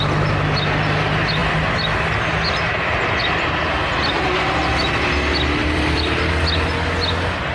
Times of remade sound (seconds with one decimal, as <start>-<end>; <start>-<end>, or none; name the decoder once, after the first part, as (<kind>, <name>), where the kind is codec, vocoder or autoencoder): 5.6-6.3 (vocoder, BigVGAN v2)